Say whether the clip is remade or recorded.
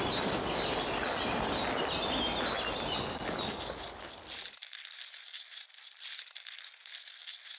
recorded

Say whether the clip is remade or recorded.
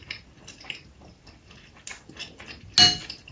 recorded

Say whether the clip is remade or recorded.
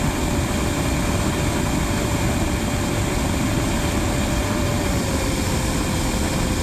recorded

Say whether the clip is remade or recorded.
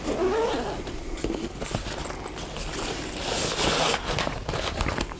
recorded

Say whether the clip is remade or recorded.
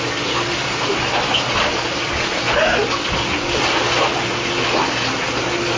recorded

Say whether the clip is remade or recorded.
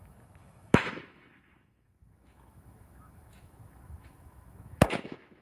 remade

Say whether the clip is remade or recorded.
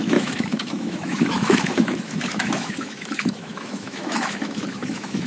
remade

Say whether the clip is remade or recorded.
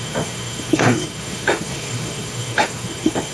remade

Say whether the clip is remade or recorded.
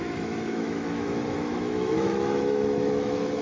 remade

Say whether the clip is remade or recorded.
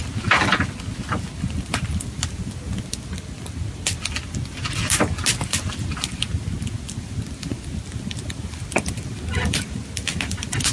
recorded